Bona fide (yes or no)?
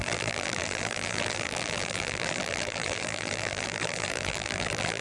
no